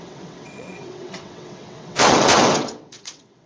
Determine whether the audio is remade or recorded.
remade